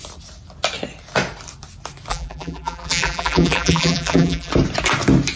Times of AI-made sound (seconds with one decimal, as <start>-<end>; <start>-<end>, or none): 2.1-4.5